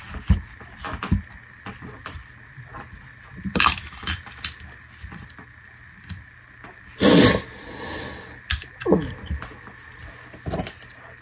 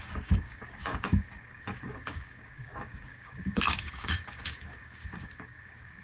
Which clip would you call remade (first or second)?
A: second